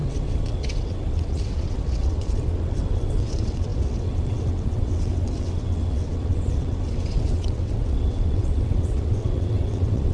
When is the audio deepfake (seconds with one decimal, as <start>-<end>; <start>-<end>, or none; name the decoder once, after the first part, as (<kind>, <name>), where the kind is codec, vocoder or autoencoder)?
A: 0.0-10.1 (vocoder, WaveNeXt)